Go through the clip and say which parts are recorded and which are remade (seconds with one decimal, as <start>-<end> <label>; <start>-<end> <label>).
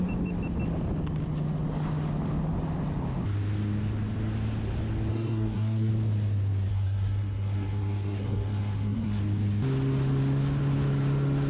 0.0-5.1 recorded; 5.1-5.9 remade; 5.9-6.7 recorded; 6.7-9.2 remade; 9.2-11.5 recorded